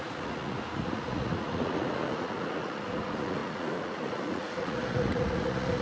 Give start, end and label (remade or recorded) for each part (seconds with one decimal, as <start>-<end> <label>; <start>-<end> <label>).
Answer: 0.0-5.8 remade